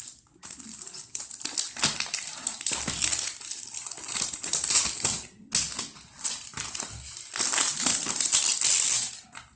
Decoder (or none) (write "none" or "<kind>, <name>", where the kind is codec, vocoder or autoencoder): none